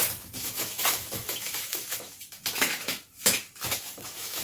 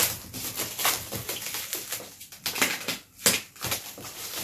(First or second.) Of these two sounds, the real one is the second